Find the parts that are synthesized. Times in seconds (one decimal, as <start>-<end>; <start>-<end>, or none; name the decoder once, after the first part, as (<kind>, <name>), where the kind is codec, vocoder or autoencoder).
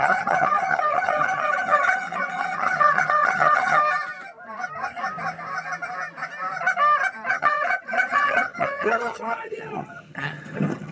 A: 0.0-3.8 (vocoder, HiFi-GAN); 7.3-10.9